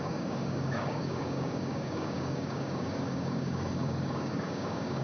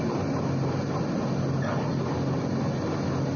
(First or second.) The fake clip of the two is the first